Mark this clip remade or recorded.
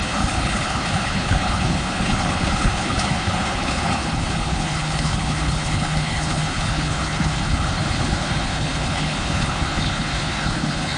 remade